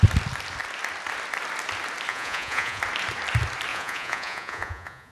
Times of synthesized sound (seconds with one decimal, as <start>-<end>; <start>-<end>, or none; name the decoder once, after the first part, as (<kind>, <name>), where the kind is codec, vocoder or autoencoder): 2.1-2.8 (vocoder, Vocos); 3.7-5.1